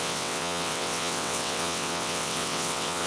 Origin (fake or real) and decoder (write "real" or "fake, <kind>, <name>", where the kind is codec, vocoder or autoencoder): fake, vocoder, WaveNeXt